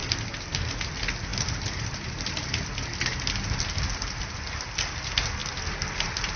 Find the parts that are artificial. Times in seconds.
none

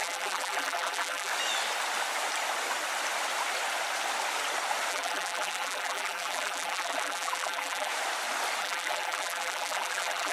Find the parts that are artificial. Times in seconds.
0.0-1.3 (vocoder, BigVGAN v2); 4.9-7.9; 8.6-10.3